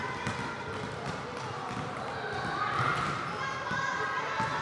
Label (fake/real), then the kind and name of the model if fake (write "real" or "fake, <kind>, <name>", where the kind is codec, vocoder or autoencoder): real